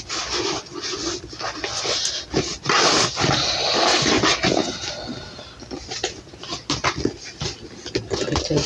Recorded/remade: recorded